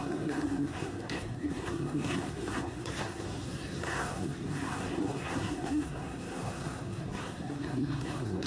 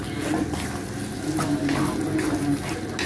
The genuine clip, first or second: second